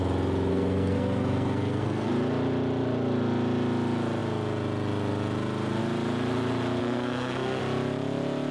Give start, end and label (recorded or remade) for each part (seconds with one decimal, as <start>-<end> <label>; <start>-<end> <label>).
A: 0.0-0.5 recorded; 0.5-2.1 remade; 2.1-6.8 recorded; 6.8-7.6 remade; 7.6-8.5 recorded